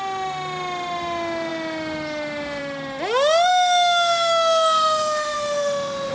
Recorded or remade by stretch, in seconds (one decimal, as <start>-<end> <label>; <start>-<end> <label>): 0.0-3.5 recorded; 3.5-6.1 remade